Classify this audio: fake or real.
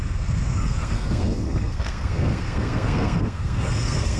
fake